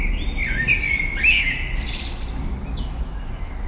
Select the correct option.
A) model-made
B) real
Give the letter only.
B